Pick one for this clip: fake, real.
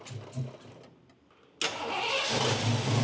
real